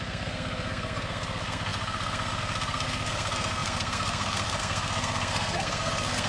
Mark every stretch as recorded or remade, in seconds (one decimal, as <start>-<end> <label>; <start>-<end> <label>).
0.0-6.3 remade